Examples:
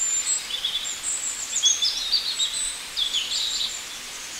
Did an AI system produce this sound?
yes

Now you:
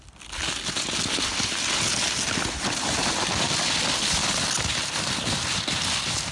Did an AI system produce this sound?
no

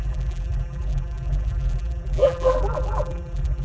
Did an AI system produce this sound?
yes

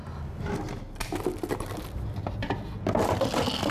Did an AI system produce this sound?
no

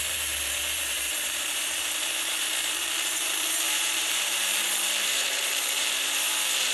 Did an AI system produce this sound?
yes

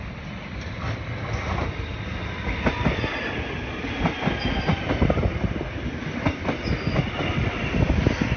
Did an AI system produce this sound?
yes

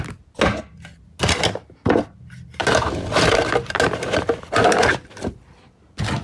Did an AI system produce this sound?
no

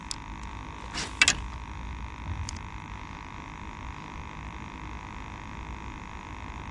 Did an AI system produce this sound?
no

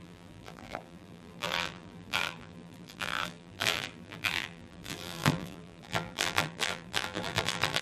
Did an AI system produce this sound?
yes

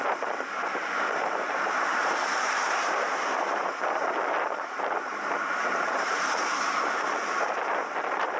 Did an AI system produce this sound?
yes